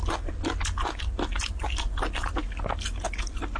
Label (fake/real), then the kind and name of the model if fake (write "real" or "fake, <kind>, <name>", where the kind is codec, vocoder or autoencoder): real